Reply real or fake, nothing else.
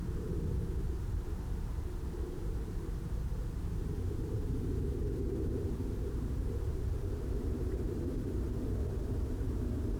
fake